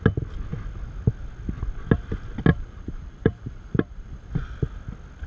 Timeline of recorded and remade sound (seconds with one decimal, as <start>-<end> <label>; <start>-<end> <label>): 0.0-2.5 recorded; 2.5-4.3 remade; 4.3-5.3 recorded